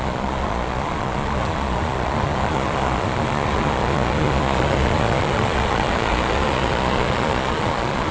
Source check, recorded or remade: remade